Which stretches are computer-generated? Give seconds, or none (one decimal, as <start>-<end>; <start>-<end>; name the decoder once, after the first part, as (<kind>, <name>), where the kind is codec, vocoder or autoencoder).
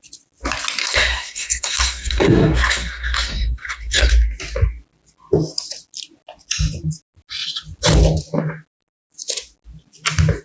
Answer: 0.8-4.1 (codec, SNAC)